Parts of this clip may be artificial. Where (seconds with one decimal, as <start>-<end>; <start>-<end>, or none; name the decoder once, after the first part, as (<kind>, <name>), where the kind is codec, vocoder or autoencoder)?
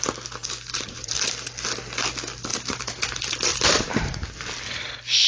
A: 0.4-1.1 (vocoder, BigVGAN v2); 2.5-3.1; 3.5-4.1